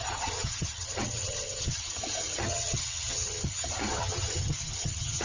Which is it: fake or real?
fake